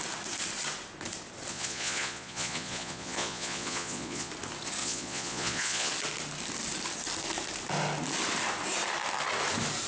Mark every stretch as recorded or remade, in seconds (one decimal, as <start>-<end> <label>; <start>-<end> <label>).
0.0-1.5 recorded; 1.5-4.3 remade; 4.3-4.8 recorded; 4.8-5.9 remade; 5.9-9.9 recorded